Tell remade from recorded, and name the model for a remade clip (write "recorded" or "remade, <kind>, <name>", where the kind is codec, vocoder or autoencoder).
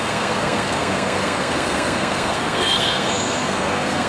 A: remade, codec, SNAC